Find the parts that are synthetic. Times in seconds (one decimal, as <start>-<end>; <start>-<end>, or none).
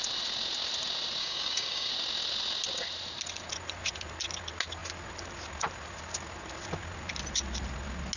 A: 1.2-1.9